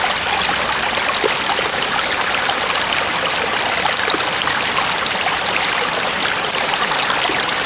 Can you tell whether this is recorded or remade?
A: recorded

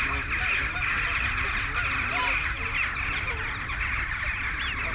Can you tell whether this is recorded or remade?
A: recorded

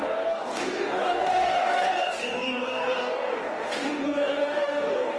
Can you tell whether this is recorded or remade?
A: remade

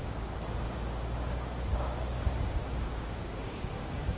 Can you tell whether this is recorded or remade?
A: remade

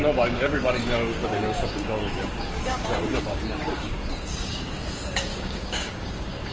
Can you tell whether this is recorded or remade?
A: remade